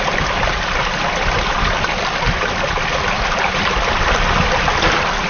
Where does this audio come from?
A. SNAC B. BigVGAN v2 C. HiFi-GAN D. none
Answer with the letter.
D